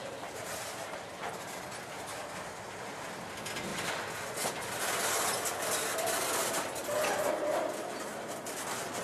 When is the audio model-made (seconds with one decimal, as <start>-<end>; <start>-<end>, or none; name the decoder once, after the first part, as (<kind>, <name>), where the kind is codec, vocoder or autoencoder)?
0.0-1.1 (vocoder, BigVGAN v2)